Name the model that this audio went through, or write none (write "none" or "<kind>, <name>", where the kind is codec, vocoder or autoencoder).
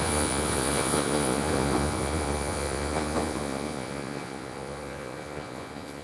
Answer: vocoder, Vocos